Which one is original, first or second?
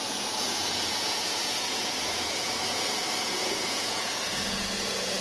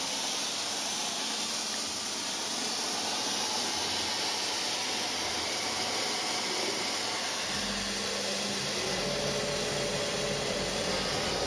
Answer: second